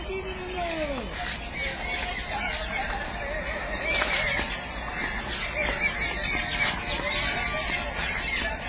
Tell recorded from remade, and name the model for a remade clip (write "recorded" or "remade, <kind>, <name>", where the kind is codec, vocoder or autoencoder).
recorded